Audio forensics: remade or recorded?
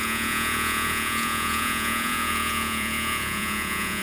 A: remade